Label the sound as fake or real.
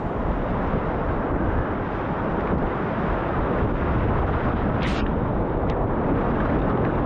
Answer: real